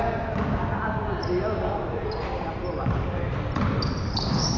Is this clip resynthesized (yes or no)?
no